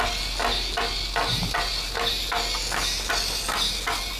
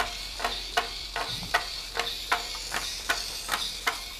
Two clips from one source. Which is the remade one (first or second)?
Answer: second